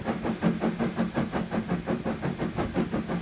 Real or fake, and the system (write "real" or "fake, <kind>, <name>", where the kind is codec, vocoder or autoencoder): real